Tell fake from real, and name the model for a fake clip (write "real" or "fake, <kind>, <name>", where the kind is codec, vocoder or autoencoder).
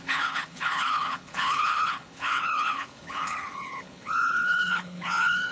fake, codec, HILCodec